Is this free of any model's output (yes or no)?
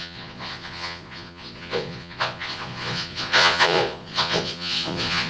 no